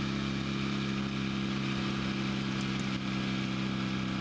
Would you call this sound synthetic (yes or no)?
no